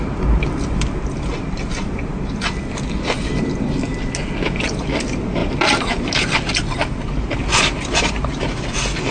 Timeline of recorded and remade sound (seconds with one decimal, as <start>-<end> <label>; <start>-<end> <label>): 0.0-5.4 recorded; 5.4-6.5 remade; 6.5-7.5 recorded; 7.5-8.4 remade; 8.4-9.1 recorded